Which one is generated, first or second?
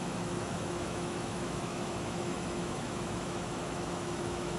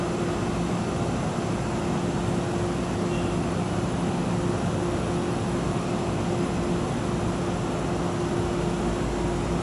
first